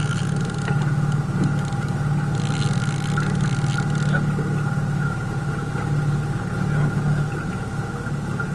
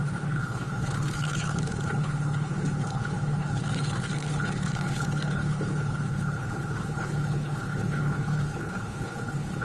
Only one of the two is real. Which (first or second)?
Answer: first